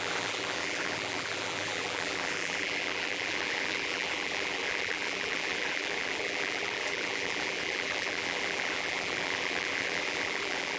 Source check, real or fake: fake